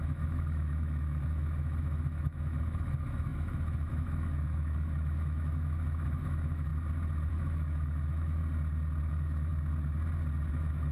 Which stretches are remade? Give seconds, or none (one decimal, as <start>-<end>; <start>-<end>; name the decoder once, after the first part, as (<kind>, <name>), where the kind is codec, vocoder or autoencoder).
0.0-6.7 (autoencoder, DAC-VAE); 7.3-8.4; 9.0-9.5; 10.5-10.9